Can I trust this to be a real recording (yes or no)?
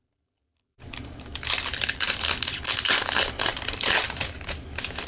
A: no